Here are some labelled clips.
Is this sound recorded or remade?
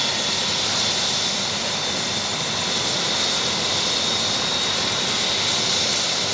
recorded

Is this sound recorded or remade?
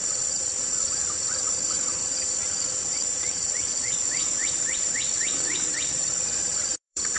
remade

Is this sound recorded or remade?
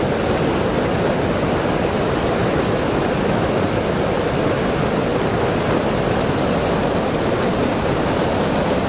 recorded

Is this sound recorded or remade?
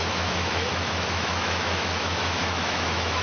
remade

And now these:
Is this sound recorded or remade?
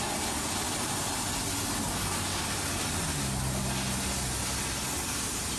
recorded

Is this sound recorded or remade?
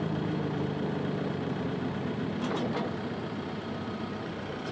remade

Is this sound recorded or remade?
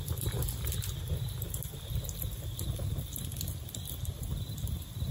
recorded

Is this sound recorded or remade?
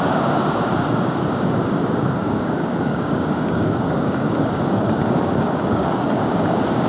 remade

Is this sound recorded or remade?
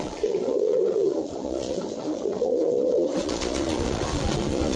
remade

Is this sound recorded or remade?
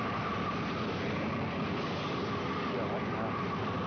recorded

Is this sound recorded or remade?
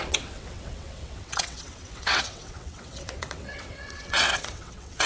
remade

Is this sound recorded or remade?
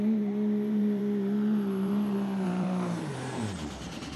remade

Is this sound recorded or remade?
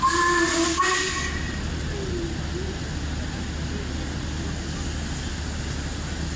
recorded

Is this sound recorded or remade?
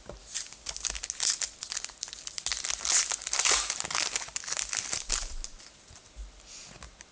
recorded